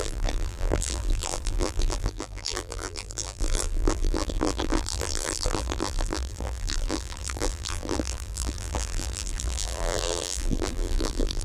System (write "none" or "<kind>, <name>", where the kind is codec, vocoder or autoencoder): vocoder, BigVGAN v2